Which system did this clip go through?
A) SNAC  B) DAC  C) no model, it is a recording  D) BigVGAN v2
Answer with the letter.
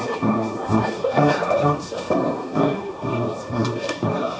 A